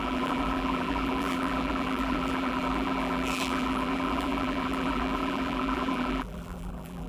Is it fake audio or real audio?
fake